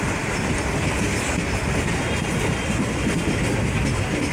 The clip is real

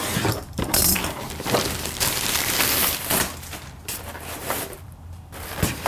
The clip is fake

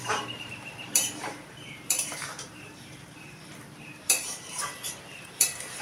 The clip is fake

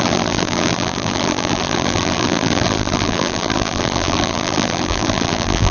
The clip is fake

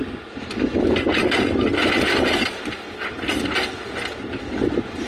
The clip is real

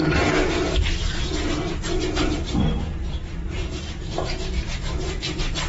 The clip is real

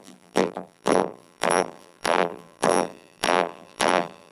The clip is fake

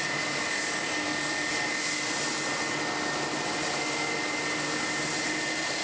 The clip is real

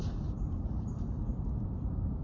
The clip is fake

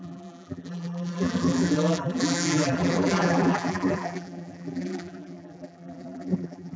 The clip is fake